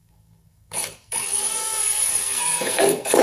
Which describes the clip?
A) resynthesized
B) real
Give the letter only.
A